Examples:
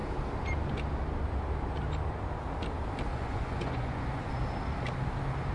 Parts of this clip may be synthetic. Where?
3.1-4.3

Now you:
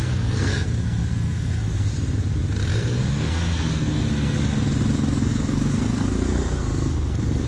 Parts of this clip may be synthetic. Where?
0.0-1.9; 2.7-4.5; 5.2-7.5

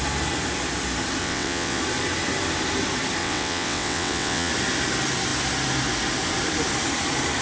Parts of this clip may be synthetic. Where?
1.2-1.8; 3.2-4.5

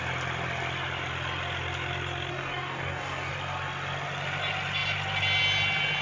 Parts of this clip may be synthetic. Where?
2.3-3.3

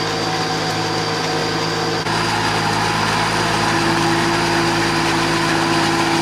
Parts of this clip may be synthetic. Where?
none

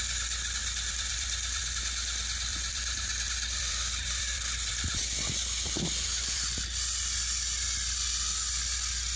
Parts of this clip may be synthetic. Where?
0.6-1.8; 2.5-6.6

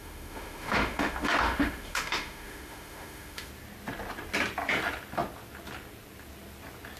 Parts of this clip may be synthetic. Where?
0.0-3.5